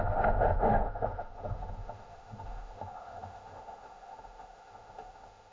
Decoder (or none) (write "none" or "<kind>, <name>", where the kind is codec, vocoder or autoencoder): autoencoder, DAC-VAE